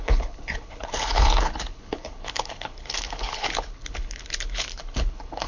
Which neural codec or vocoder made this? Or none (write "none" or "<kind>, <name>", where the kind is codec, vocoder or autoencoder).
codec, HILCodec